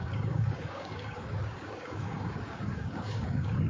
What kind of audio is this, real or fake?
fake